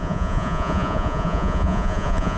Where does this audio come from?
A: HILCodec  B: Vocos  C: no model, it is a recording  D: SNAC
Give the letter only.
B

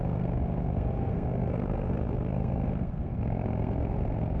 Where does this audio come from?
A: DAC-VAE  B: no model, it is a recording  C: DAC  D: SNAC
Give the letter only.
D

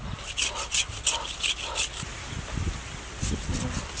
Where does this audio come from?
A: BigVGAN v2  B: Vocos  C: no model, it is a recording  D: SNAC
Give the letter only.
C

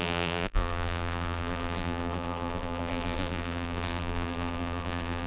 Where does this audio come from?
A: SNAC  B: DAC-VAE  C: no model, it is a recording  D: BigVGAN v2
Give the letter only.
D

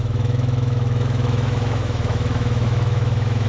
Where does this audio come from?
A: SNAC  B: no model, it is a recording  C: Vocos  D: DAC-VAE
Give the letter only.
D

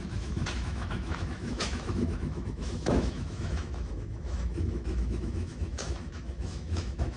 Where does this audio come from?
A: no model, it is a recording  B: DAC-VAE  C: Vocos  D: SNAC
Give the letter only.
B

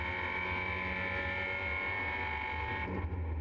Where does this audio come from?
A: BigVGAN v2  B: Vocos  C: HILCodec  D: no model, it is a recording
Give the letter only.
D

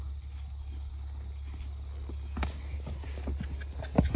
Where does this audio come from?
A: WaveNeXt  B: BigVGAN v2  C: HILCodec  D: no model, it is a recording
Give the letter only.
D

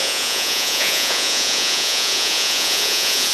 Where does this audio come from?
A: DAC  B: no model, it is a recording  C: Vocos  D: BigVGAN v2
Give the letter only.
C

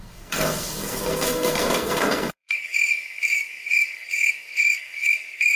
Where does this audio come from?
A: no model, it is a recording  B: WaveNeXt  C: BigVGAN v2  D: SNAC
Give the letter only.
D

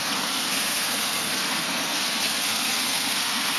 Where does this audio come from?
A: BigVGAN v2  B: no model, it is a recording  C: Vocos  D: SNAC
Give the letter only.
D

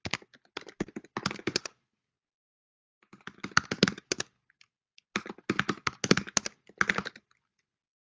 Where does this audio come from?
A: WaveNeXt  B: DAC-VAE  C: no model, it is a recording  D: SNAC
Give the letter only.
C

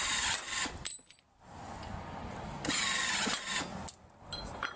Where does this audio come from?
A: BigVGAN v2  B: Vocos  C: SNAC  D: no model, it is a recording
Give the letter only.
D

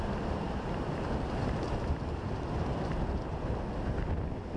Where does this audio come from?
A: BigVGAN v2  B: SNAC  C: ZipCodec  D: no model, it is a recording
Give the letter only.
D